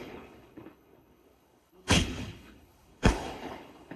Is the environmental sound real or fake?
fake